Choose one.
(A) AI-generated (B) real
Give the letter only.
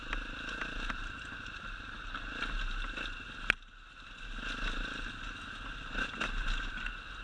B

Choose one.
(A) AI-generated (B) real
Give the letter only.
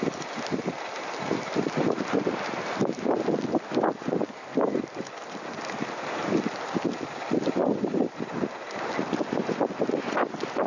B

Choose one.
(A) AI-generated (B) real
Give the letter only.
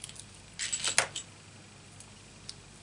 B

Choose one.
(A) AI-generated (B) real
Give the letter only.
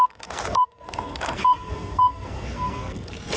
A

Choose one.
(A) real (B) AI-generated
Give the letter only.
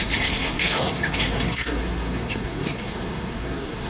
B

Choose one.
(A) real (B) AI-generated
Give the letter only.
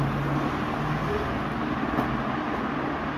A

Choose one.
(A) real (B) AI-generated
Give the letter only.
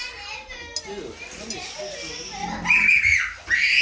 A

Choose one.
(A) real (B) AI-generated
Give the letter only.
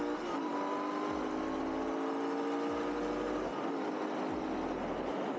A